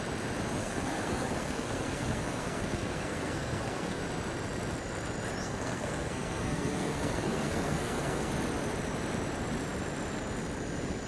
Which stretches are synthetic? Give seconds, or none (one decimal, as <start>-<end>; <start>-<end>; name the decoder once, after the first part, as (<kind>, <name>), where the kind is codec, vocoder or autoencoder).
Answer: 0.6-4.0 (codec, SNAC); 5.4-8.3